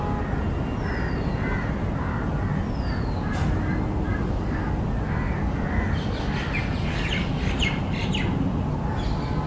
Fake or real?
real